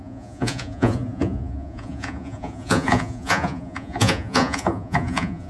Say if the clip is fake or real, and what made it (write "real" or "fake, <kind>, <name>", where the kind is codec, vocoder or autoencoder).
fake, vocoder, Vocos